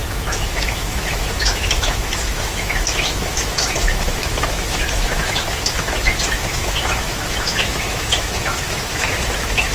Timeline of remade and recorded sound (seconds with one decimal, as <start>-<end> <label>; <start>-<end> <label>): 0.0-9.7 remade